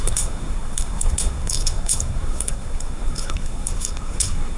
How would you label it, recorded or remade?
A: remade